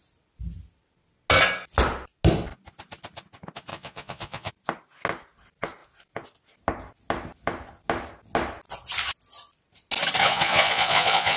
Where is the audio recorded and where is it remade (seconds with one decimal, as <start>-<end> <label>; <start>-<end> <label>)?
0.0-3.7 recorded; 3.7-4.5 remade; 4.5-10.2 recorded; 10.2-11.4 remade

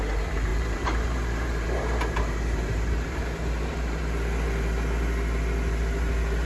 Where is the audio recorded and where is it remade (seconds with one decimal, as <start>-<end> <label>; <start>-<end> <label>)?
0.0-0.5 recorded; 0.5-4.0 remade; 4.0-6.4 recorded

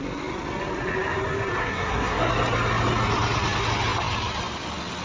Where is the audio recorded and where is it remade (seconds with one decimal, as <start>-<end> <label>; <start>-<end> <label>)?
0.0-1.6 recorded; 1.6-2.3 remade; 2.3-5.0 recorded

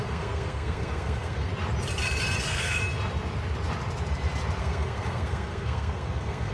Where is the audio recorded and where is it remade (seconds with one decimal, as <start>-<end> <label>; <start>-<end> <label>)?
0.0-1.5 remade; 1.5-2.4 recorded; 2.4-2.8 remade; 2.8-4.6 recorded; 4.6-6.5 remade

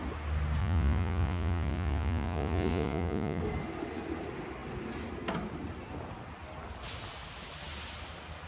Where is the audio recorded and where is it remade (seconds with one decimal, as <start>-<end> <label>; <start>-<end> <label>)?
0.0-0.6 recorded; 0.6-3.4 remade; 3.4-8.5 recorded

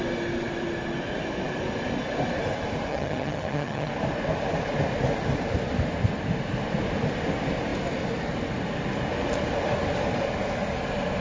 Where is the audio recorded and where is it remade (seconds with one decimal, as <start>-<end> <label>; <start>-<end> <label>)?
0.0-2.9 recorded; 2.9-3.9 remade; 3.9-11.2 recorded

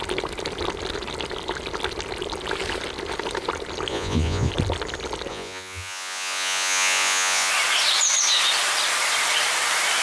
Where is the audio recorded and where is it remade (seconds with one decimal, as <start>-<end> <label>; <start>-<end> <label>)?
0.0-3.9 recorded; 3.9-4.5 remade; 4.5-5.3 recorded; 5.3-7.5 remade; 7.5-10.0 recorded

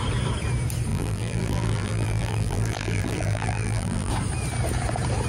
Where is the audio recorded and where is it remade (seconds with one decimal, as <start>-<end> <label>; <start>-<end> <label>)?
0.0-0.9 recorded; 0.9-4.1 remade; 4.1-5.3 recorded